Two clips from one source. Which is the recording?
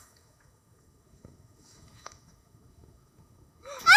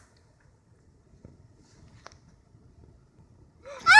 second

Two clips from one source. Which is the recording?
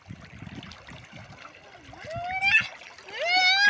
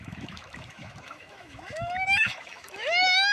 first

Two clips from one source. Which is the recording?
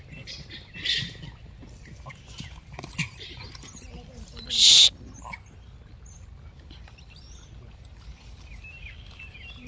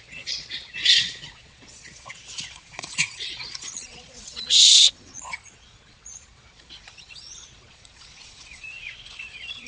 first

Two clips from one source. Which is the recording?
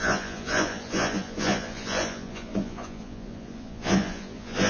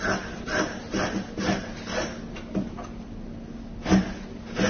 second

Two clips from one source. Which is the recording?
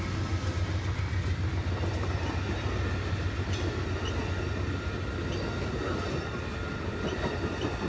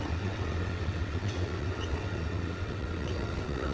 first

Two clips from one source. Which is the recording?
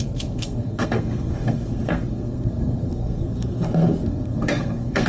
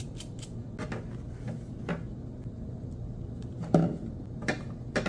second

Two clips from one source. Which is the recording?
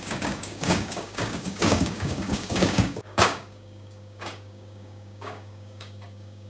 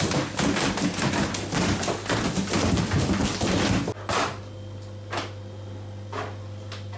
second